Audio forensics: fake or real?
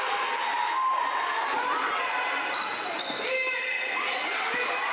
real